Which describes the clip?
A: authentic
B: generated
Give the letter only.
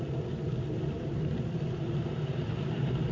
A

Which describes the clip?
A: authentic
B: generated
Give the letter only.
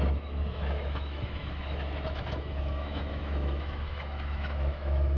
B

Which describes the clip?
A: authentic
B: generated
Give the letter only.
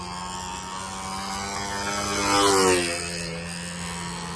A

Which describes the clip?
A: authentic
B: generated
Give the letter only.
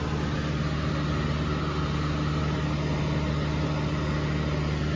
A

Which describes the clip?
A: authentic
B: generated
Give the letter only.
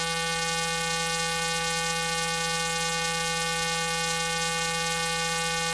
B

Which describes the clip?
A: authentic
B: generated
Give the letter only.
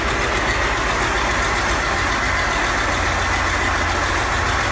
A